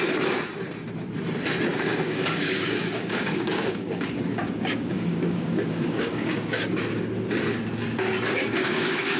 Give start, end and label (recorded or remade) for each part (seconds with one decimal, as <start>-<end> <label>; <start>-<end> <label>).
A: 0.0-1.7 recorded; 1.7-6.8 remade; 6.8-8.4 recorded; 8.4-9.2 remade